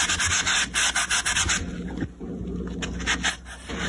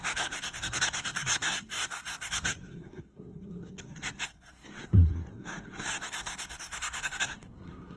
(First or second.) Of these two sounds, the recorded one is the first